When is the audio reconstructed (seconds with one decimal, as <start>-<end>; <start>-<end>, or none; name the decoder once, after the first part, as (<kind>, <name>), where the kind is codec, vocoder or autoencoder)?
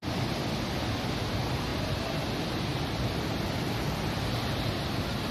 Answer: 1.7-5.3 (vocoder, BigVGAN v2)